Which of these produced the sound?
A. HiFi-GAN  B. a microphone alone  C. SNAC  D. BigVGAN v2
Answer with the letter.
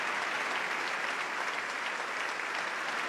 B